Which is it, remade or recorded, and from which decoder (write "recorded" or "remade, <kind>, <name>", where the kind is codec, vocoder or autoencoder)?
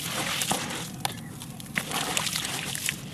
remade, vocoder, BigVGAN v2